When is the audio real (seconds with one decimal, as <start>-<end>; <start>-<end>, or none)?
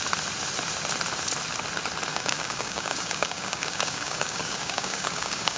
0.0-2.1